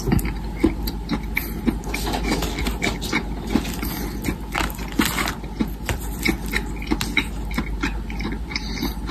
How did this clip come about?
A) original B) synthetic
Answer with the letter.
A